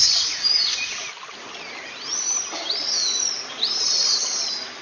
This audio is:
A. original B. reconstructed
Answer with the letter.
A